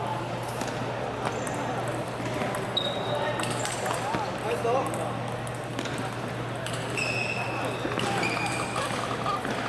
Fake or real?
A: real